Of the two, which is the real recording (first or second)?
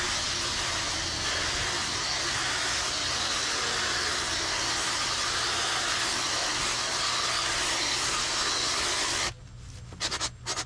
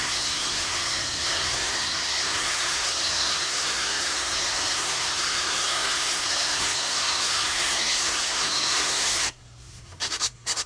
first